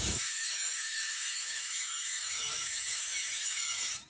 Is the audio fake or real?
fake